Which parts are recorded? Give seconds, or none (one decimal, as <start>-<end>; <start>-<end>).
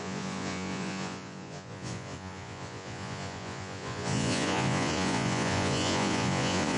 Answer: none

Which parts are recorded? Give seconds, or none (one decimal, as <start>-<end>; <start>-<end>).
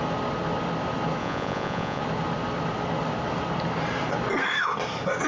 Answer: 0.0-1.2; 2.0-5.3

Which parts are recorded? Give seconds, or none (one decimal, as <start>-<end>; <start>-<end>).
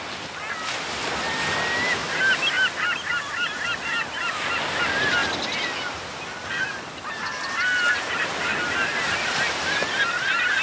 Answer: 0.0-10.6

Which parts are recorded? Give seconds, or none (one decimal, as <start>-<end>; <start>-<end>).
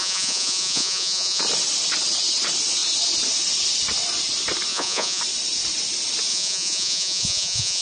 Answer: 1.4-4.7; 5.2-6.3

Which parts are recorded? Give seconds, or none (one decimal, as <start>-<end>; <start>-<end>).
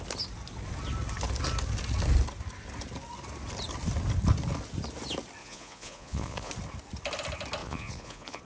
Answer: 0.0-5.4; 6.5-7.6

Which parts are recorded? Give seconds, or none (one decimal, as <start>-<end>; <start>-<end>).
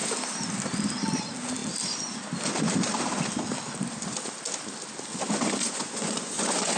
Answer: 0.0-5.6